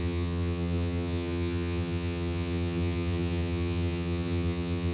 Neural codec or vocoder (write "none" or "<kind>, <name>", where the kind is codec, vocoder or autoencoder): vocoder, HiFi-GAN